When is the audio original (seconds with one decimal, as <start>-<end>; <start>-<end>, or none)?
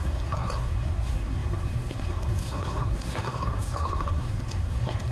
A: none